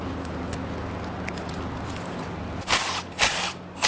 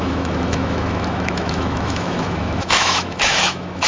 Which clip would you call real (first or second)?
first